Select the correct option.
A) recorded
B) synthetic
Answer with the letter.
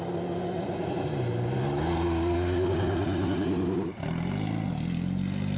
A